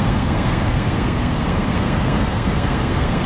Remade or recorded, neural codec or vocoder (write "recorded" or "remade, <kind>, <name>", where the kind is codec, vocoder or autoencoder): remade, codec, SNAC